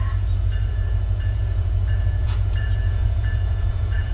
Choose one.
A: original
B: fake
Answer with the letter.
B